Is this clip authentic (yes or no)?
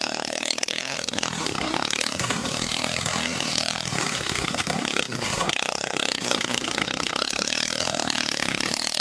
no